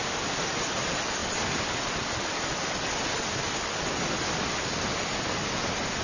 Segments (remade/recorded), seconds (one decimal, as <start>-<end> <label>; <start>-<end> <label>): 0.0-6.0 recorded